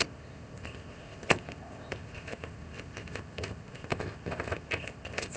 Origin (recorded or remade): remade